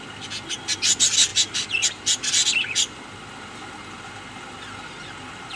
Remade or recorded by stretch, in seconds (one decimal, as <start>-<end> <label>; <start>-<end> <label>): 0.0-5.6 recorded